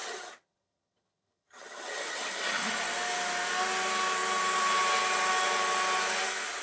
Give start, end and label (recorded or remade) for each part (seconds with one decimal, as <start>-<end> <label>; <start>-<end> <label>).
0.0-2.7 remade; 2.7-6.6 recorded